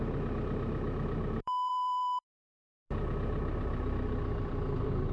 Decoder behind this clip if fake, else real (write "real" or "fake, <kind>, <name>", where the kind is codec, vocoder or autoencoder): fake, vocoder, BigVGAN v2